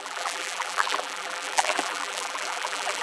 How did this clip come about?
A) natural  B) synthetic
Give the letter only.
B